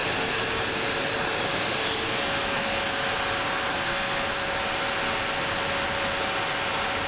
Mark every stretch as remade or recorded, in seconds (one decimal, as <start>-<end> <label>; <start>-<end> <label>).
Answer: 0.0-2.0 recorded; 2.0-2.8 remade; 2.8-3.7 recorded; 3.7-4.3 remade; 4.3-7.1 recorded